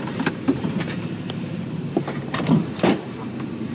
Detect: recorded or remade remade